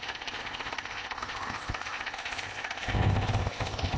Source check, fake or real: fake